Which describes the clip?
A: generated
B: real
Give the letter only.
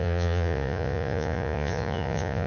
A